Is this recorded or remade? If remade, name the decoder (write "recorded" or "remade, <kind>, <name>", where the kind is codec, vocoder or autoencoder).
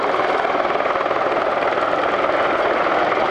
recorded